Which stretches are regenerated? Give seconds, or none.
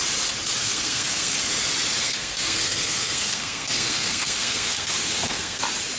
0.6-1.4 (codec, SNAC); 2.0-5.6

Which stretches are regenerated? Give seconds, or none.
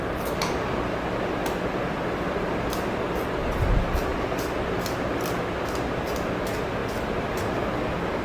none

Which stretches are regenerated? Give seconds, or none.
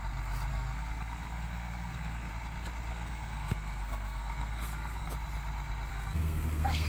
0.5-2.3 (codec, SNAC); 2.9-5.1; 5.9-6.9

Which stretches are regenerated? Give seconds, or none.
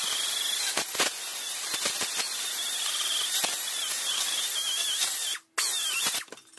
none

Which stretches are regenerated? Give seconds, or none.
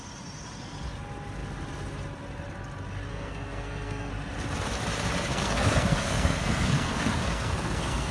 3.1-4.1 (codec, SNAC); 5.3-8.1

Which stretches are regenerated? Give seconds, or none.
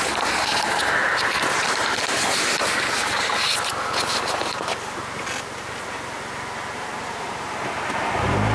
none